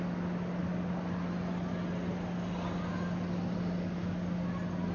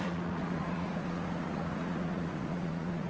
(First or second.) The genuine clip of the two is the first